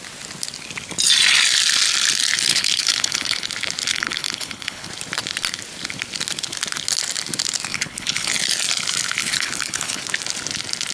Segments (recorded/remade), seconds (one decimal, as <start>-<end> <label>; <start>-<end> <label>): 0.0-2.5 recorded; 2.5-3.5 remade; 3.5-3.9 recorded; 3.9-4.9 remade; 4.9-7.7 recorded; 7.7-8.3 remade; 8.3-9.2 recorded; 9.2-10.0 remade; 10.0-10.9 recorded